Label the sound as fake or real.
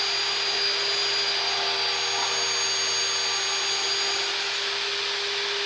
real